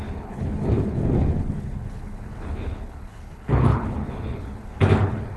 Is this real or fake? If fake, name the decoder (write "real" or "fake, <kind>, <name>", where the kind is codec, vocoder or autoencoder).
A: fake, codec, HILCodec